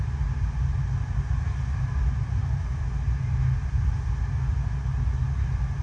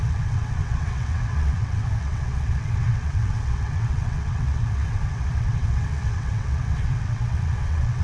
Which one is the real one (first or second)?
first